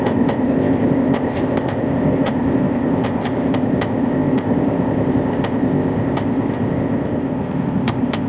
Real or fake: fake